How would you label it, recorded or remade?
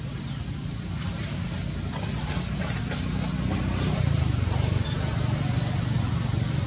recorded